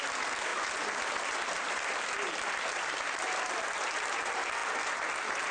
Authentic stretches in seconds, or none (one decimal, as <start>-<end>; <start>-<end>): 0.0-5.5